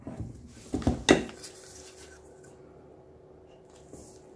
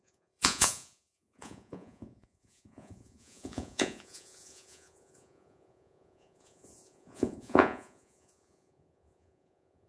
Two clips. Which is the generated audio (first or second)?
second